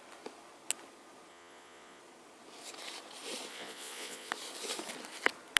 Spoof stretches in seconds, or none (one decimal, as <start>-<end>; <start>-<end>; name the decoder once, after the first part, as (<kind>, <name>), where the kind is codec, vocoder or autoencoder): 1.3-2.0 (vocoder, Vocos); 3.5-4.3